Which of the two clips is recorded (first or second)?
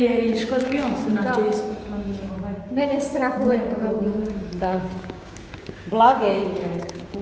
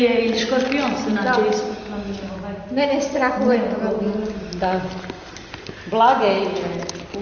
second